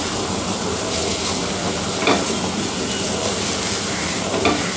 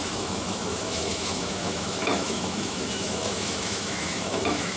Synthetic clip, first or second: second